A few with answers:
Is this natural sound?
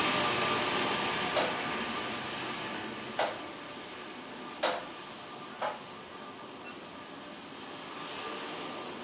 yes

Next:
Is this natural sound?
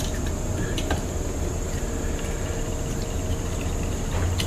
yes